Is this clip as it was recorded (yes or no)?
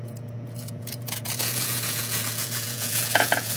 no